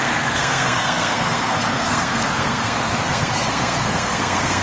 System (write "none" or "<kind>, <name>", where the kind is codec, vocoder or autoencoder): codec, SNAC